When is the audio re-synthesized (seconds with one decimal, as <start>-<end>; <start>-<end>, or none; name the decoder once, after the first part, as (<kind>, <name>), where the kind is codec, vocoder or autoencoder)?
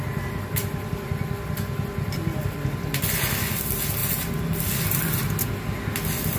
none